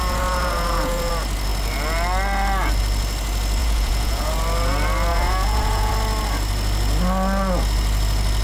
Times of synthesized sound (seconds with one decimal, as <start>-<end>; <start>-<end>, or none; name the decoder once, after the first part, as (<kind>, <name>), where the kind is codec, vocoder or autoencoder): 0.0-1.1 (vocoder, Vocos); 3.6-4.3; 5.1-5.9